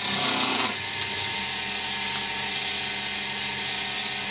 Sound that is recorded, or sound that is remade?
recorded